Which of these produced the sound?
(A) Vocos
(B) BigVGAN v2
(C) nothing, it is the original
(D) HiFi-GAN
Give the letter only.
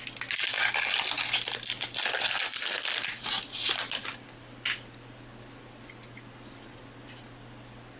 C